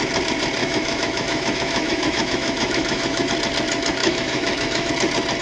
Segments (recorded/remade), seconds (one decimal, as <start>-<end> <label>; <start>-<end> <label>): 0.0-0.6 recorded; 0.6-3.3 remade; 3.3-4.0 recorded; 4.0-4.9 remade; 4.9-5.4 recorded

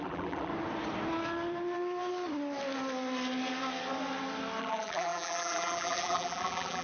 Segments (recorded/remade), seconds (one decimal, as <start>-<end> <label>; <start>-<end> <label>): 0.0-0.5 remade; 0.5-4.6 recorded; 4.6-6.8 remade

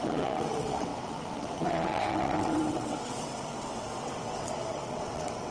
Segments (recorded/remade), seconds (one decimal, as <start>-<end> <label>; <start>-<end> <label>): 0.0-5.5 remade